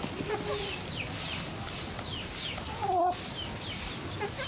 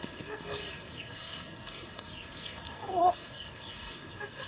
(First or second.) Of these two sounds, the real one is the first